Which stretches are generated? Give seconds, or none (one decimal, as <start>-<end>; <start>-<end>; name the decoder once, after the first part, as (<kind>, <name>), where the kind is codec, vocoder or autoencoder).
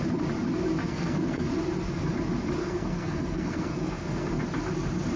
0.8-1.5 (codec, SNAC); 2.6-4.4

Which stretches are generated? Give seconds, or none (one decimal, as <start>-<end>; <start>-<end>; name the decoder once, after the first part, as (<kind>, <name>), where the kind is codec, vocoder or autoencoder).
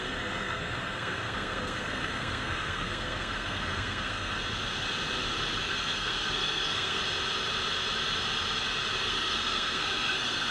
0.0-4.4 (codec, SNAC); 5.6-7.0; 8.9-10.5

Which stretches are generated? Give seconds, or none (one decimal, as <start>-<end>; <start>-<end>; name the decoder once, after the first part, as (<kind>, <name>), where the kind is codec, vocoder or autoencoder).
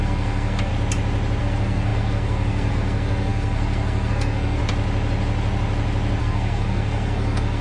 0.0-0.7 (codec, SNAC); 1.4-4.6; 6.2-7.6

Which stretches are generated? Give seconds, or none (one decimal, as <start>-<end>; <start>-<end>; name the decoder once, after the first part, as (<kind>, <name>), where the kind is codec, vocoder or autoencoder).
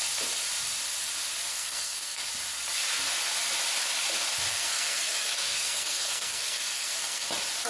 1.5-2.3 (codec, SNAC); 4.5-7.3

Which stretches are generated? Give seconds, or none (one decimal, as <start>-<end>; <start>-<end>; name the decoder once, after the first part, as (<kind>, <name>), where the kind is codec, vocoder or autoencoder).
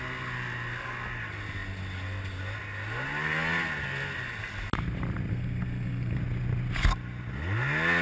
5.3-6.2 (codec, SNAC)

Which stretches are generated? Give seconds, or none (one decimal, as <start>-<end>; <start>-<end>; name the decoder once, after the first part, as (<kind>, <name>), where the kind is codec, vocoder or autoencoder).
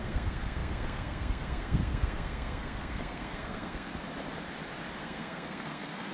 0.0-3.9 (codec, SNAC); 5.0-6.1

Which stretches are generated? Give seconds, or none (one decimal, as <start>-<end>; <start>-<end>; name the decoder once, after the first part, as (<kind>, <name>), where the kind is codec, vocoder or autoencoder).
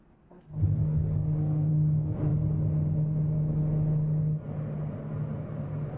0.7-1.7 (codec, SNAC)